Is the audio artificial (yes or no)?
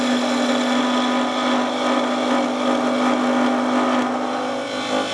no